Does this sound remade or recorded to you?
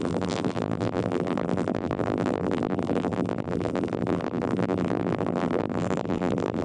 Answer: remade